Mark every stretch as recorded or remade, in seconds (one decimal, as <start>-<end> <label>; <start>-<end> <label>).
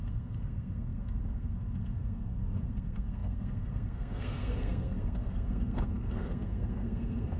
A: 0.0-7.4 remade